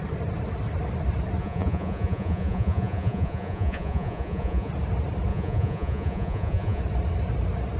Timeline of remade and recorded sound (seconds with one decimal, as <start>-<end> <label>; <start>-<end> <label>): 0.0-1.4 recorded; 1.4-4.7 remade; 4.7-5.3 recorded; 5.3-6.8 remade; 6.8-7.8 recorded